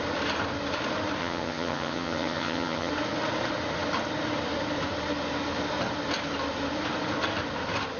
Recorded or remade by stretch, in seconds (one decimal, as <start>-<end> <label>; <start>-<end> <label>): 0.0-1.2 recorded; 1.2-2.9 remade; 2.9-8.0 recorded